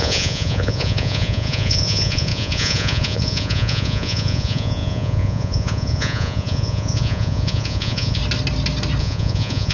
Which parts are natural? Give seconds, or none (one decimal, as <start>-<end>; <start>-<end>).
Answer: 8.2-9.0